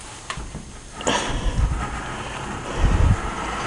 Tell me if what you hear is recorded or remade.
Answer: recorded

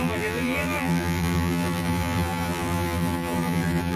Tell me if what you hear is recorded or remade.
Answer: remade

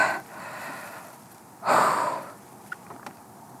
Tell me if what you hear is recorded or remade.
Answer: remade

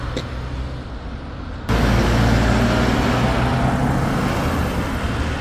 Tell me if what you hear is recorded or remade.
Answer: recorded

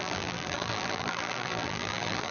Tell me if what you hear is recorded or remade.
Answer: remade